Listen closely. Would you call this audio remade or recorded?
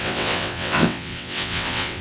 remade